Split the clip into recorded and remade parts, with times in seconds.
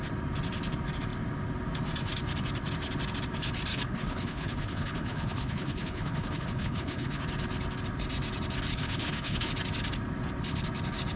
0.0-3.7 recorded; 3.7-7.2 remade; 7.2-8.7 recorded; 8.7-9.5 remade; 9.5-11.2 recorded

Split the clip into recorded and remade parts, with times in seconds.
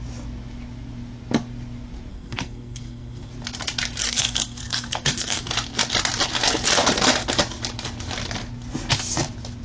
0.0-2.1 recorded; 2.1-3.3 remade; 3.3-4.0 recorded; 4.0-5.4 remade; 5.4-9.6 recorded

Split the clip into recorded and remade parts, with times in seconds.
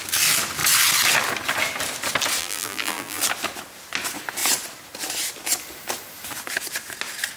0.0-2.4 recorded; 2.4-3.2 remade; 3.2-7.4 recorded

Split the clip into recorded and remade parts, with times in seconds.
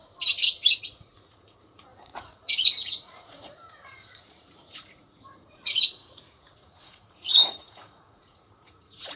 0.0-0.8 recorded; 0.8-9.2 remade